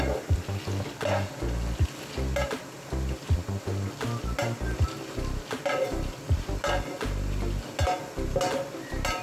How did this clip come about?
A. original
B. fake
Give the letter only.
A